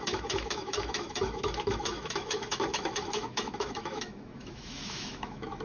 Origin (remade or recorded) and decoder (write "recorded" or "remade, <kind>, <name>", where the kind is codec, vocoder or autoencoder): remade, autoencoder, DAC-VAE